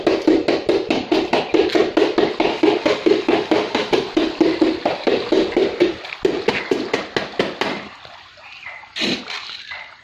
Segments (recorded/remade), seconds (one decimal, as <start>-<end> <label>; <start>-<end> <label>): 0.0-2.5 recorded; 2.5-3.9 remade; 3.9-10.0 recorded

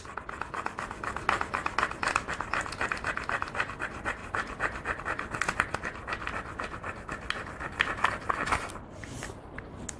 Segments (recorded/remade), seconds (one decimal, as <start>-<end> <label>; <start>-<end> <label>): 0.0-4.2 recorded; 4.2-5.0 remade; 5.0-10.0 recorded

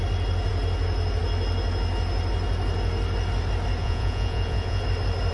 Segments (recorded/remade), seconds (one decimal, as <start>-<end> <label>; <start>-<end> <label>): 0.0-3.8 recorded; 3.8-4.8 remade; 4.8-5.3 recorded

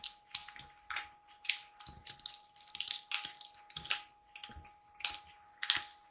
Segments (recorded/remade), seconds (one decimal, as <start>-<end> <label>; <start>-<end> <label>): 0.0-2.0 recorded; 2.0-2.9 remade; 2.9-6.1 recorded